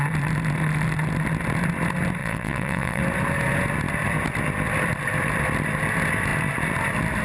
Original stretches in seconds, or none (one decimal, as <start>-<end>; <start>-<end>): 0.0-2.2; 3.0-7.2